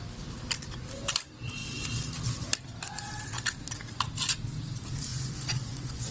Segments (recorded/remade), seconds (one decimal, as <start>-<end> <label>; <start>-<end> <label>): 0.0-5.1 recorded; 5.1-6.1 remade